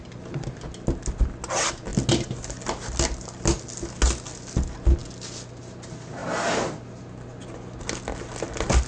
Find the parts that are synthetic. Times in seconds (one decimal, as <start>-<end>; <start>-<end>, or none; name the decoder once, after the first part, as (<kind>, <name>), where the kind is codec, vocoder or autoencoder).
none